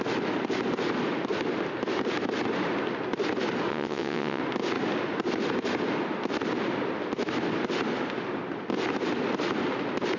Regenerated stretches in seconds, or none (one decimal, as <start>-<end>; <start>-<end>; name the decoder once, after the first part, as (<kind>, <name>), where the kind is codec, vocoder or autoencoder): 3.7-4.4 (vocoder, WaveNeXt)